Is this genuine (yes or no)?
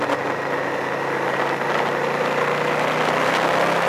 yes